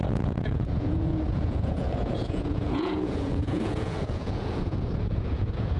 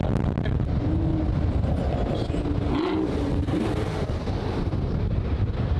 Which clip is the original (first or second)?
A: second